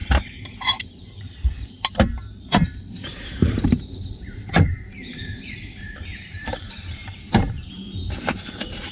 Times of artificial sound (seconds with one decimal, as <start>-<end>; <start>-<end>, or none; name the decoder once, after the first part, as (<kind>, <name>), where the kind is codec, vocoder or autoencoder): 0.0-8.9 (vocoder, BigVGAN v2)